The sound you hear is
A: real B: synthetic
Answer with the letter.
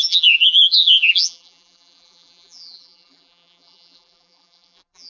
B